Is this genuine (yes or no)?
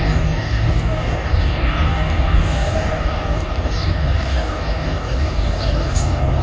no